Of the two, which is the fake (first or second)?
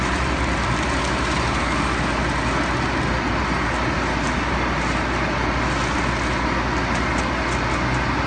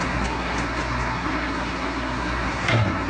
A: second